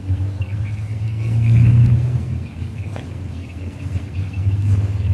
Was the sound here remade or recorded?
remade